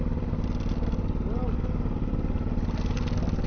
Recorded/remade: recorded